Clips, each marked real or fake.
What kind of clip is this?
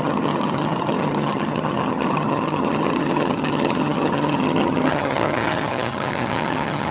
fake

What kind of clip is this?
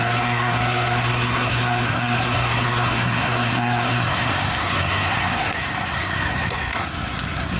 fake